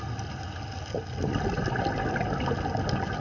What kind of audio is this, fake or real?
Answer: real